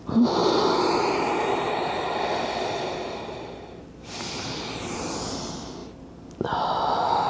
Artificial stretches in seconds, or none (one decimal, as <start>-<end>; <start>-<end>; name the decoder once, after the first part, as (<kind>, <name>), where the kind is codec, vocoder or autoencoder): none